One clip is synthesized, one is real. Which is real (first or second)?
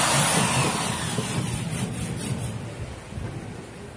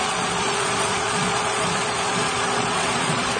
first